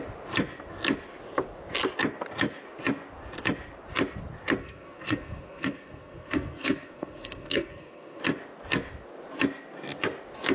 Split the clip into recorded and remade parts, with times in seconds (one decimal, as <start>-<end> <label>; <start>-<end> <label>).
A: 0.0-4.6 recorded; 4.6-8.2 remade; 8.2-10.5 recorded